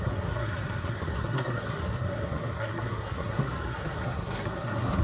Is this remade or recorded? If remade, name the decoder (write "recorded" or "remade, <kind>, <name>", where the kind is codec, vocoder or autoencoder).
remade, codec, SNAC